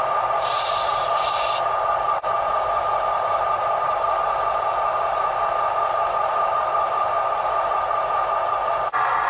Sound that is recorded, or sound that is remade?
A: recorded